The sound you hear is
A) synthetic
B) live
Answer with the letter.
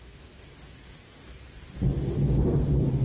B